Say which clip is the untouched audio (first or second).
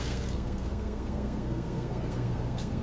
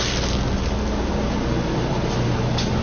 second